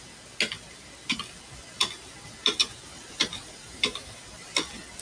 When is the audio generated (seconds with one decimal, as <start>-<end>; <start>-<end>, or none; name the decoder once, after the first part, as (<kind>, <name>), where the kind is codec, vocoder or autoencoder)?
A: 2.6-4.2 (vocoder, BigVGAN v2)